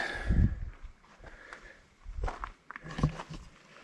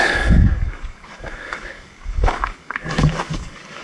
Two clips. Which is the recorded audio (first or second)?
first